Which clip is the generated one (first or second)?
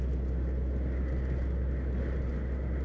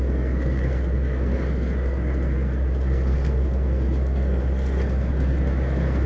second